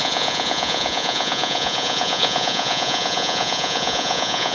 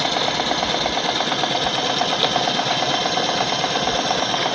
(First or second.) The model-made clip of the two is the first